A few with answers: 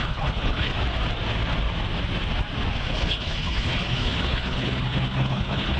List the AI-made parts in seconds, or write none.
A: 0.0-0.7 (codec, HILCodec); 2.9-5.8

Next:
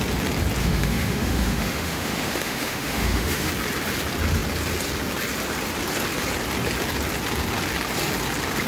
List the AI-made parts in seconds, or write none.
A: 0.6-3.5 (autoencoder, DAC-VAE)

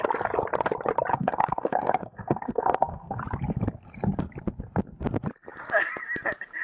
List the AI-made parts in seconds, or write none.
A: 1.1-3.2 (codec, SNAC)

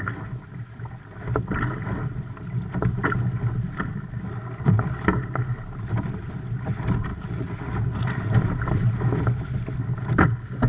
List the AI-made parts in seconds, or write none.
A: 7.1-7.7 (vocoder, Vocos)

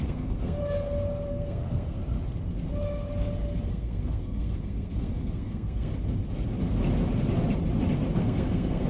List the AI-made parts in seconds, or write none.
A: 0.0-0.6 (codec, SNAC); 1.3-2.0; 3.7-5.9; 8.2-8.9

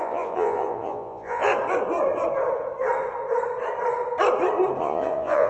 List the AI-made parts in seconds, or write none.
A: 0.0-1.5 (vocoder, Vocos); 4.8-5.5

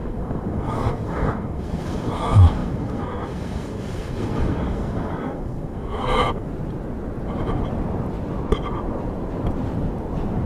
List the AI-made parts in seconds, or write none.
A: 0.0-6.5 (codec, SNAC)